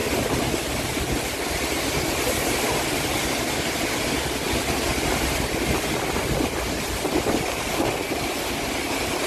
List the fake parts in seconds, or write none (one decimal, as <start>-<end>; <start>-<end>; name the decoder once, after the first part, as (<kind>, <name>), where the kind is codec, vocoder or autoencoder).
none